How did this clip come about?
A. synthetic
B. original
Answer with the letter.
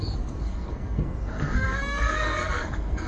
A